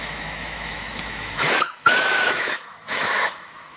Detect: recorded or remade remade